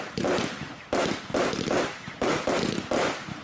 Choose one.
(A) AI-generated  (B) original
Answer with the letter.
B